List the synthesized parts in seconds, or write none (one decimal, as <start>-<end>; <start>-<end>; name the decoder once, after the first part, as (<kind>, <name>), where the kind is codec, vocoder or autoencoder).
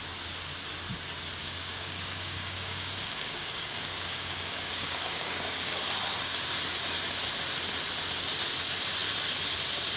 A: 1.4-5.8 (codec, DAC)